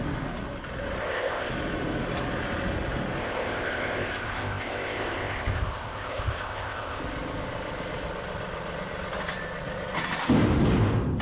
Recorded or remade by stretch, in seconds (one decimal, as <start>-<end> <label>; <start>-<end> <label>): 0.0-1.0 recorded; 1.0-1.5 remade; 1.5-3.2 recorded; 3.2-7.0 remade; 7.0-11.2 recorded